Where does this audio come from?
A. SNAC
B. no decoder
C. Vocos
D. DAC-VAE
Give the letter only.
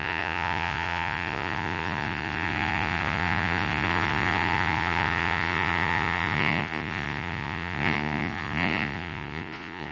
C